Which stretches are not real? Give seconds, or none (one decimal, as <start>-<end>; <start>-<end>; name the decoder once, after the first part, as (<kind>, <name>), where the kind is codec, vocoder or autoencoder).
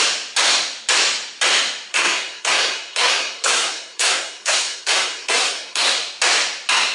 1.9-6.0 (codec, SNAC)